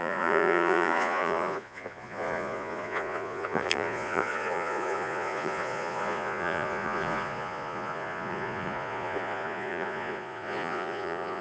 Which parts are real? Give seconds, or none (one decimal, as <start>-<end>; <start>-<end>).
none